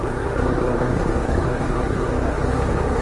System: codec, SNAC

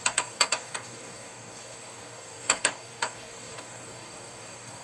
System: codec, DAC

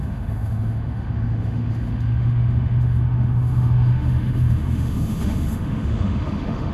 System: autoencoder, DAC-VAE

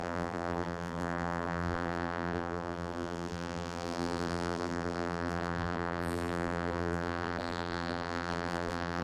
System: vocoder, BigVGAN v2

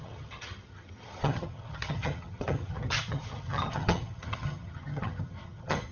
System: vocoder, HiFi-GAN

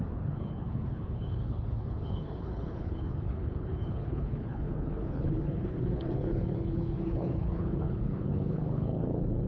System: codec, HILCodec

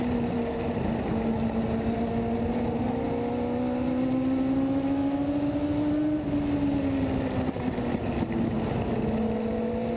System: none